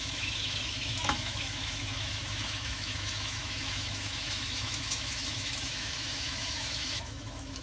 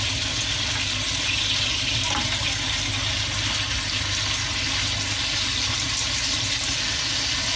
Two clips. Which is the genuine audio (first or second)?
second